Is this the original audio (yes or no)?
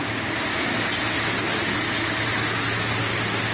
yes